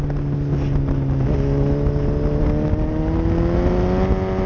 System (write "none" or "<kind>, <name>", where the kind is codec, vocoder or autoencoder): none